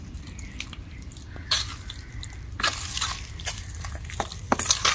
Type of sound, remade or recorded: remade